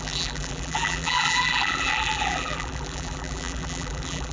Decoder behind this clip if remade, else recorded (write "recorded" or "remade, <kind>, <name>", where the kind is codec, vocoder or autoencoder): remade, vocoder, BigVGAN v2